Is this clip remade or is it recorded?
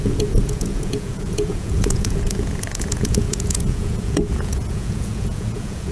remade